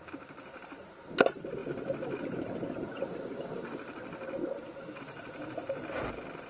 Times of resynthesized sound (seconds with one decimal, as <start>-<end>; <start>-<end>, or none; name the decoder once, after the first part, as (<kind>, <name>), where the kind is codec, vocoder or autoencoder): none